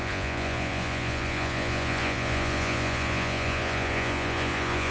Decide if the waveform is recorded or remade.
remade